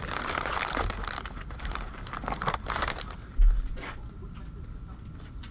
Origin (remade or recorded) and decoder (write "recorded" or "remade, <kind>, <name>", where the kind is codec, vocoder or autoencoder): recorded